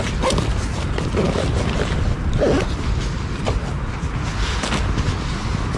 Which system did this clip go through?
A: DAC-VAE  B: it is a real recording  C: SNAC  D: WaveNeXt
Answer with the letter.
B